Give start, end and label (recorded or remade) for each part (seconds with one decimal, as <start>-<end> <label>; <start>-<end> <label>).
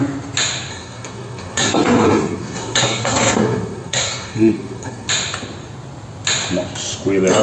0.0-0.7 recorded; 0.7-5.1 remade; 5.1-7.4 recorded